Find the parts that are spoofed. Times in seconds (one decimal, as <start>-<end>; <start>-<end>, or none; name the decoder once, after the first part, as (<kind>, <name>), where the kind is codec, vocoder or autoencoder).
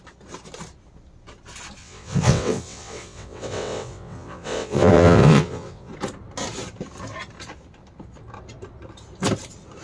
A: 1.8-5.9 (vocoder, WaveNeXt)